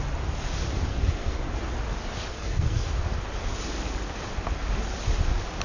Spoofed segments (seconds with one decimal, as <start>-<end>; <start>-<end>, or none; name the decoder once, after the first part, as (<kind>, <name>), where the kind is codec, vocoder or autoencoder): 0.9-1.4 (codec, SNAC); 2.3-2.9